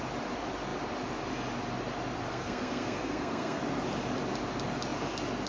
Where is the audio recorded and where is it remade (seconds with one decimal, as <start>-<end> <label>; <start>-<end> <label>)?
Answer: 0.0-2.3 recorded; 2.3-3.6 remade; 3.6-5.5 recorded